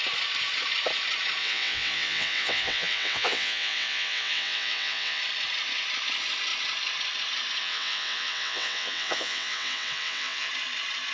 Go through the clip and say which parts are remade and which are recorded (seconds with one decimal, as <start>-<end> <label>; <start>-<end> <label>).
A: 0.0-1.4 recorded; 1.4-5.2 remade; 5.2-7.6 recorded; 7.6-10.5 remade; 10.5-11.1 recorded